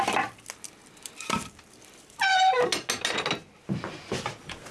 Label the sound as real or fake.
real